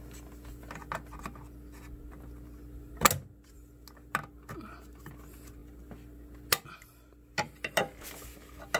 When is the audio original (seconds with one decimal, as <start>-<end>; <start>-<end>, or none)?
0.0-8.8